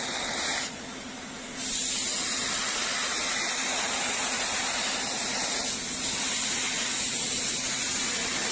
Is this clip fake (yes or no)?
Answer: no